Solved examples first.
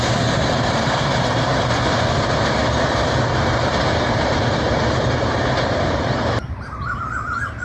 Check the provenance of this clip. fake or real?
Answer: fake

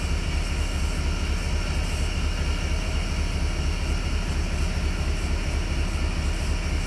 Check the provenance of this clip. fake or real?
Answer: real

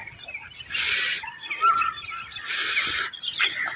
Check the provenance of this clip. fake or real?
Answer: real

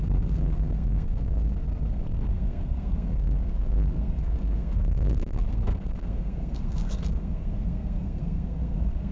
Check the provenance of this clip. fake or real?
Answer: fake